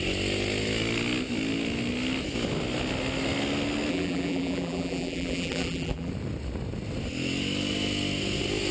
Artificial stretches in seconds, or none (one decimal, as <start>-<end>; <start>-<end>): 3.9-6.1